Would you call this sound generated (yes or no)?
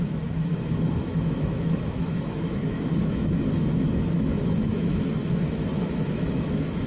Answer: yes